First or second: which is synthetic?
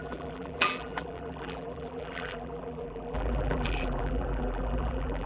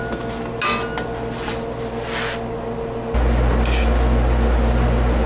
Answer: first